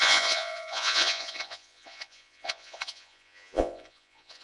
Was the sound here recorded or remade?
remade